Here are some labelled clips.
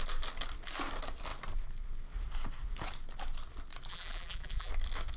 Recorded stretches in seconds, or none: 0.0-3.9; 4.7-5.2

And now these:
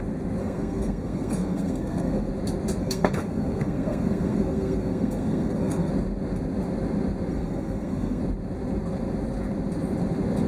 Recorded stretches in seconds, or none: 0.0-0.4; 2.3-2.8; 5.9-7.3; 8.2-10.5